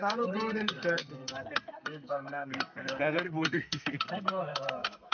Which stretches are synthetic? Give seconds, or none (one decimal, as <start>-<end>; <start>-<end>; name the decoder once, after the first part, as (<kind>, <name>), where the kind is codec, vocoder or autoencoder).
0.0-5.1 (codec, SNAC)